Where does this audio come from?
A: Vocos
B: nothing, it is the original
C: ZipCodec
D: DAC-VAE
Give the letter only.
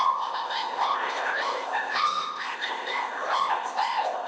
C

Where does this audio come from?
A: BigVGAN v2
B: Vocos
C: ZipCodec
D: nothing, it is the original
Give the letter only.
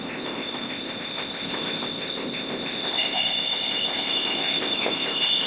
C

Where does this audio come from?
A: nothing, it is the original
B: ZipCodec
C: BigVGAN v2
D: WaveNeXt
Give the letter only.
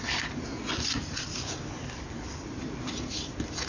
A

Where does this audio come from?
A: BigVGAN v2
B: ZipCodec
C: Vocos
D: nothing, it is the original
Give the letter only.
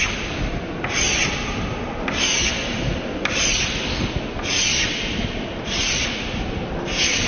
D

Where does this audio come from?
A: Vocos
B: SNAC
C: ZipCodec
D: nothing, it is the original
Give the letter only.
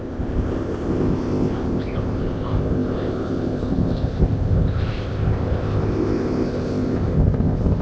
C